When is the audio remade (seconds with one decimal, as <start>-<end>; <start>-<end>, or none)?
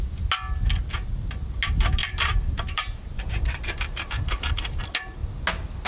2.0-4.8